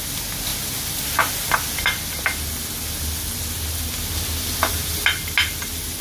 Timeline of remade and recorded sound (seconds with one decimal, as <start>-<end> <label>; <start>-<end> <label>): 0.0-6.0 recorded